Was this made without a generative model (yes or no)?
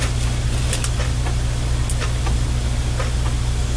yes